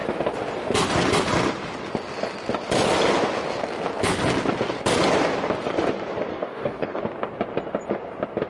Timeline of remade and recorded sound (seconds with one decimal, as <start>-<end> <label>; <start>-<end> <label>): 0.0-6.3 recorded; 6.3-7.0 remade; 7.0-8.5 recorded